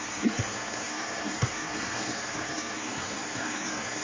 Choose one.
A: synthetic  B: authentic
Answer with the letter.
A